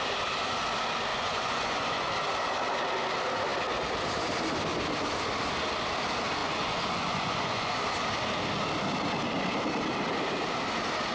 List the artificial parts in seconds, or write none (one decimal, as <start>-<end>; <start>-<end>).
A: 1.1-2.1; 6.4-7.8